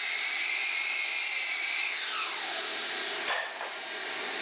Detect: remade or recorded recorded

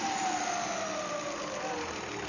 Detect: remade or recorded recorded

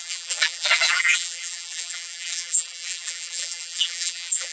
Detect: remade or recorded remade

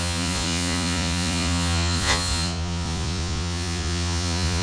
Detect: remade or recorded remade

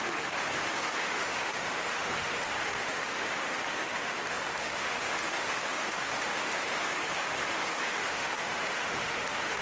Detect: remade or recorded remade